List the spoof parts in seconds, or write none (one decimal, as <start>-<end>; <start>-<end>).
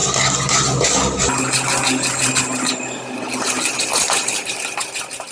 none